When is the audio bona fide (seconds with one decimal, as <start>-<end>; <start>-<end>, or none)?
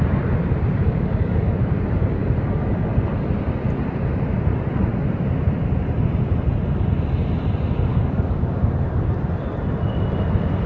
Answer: 0.0-0.8; 1.8-7.9; 8.5-10.7